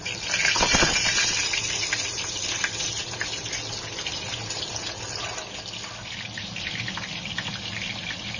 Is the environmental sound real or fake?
real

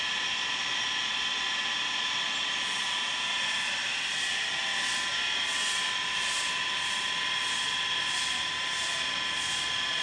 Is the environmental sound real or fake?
real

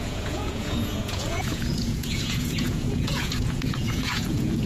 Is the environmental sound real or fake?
fake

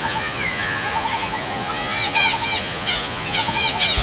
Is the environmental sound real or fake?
fake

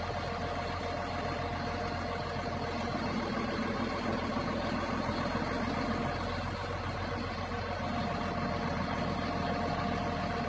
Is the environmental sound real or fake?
real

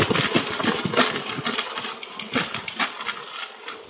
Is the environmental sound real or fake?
real